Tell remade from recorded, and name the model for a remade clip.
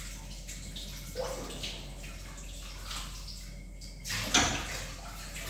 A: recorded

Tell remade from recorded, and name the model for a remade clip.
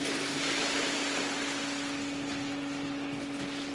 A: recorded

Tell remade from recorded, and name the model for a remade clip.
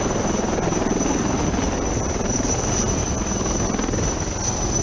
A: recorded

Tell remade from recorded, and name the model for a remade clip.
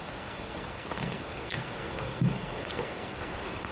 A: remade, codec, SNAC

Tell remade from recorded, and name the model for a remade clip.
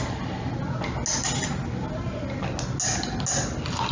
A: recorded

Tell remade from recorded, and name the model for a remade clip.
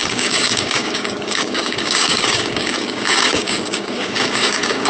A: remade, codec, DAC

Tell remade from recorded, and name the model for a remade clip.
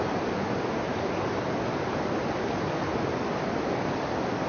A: recorded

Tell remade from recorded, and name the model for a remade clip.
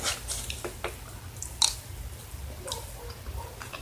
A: recorded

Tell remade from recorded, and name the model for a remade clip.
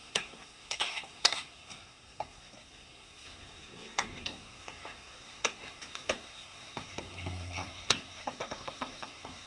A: remade, codec, SNAC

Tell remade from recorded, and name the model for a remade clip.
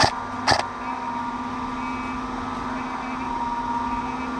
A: recorded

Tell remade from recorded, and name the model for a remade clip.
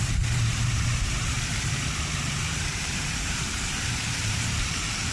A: remade, vocoder, BigVGAN v2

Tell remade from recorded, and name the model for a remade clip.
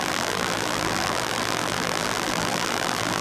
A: remade, vocoder, BigVGAN v2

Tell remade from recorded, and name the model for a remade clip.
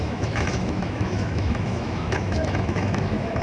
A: remade, autoencoder, DAC-VAE